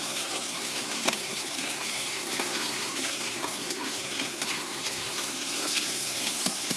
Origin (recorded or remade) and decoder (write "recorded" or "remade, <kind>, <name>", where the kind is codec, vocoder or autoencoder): remade, codec, SNAC